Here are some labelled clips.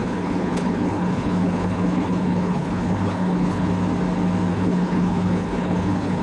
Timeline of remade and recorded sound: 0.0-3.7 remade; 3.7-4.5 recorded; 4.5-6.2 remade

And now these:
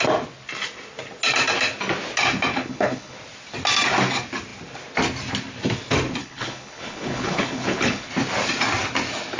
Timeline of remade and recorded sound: 0.0-2.5 recorded; 2.5-3.2 remade; 3.2-6.2 recorded; 6.2-8.1 remade; 8.1-9.4 recorded

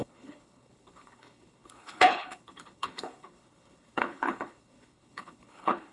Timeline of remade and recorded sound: 0.0-5.9 remade

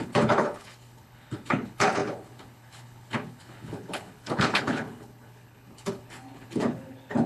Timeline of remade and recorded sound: 0.0-7.3 remade

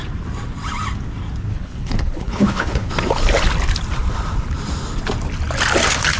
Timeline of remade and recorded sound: 0.0-1.5 recorded; 1.5-2.9 remade; 2.9-6.2 recorded

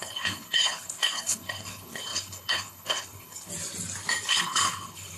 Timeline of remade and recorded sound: 0.0-3.5 remade; 3.5-4.3 recorded; 4.3-5.2 remade

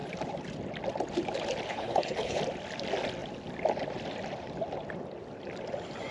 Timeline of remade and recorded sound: 0.0-1.7 recorded; 1.7-2.4 remade; 2.4-6.1 recorded